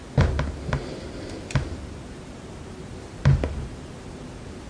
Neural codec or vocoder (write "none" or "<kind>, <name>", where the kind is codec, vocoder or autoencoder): none